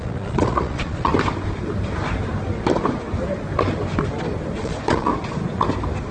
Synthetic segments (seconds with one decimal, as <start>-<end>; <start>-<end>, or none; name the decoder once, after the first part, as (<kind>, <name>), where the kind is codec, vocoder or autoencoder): 0.0-1.1 (vocoder, Vocos); 4.6-5.1